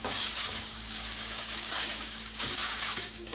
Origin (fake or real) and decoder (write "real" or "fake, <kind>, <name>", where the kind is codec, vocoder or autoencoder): fake, codec, DAC